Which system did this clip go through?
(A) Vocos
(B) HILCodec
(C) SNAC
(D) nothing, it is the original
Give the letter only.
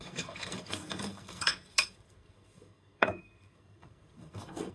C